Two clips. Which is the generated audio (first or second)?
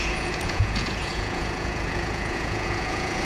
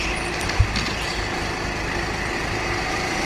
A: first